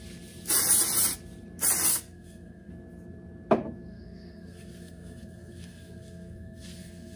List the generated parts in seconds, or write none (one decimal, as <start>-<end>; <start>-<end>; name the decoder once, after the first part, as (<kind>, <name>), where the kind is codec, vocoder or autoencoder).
1.9-2.7 (codec, SNAC); 3.9-7.2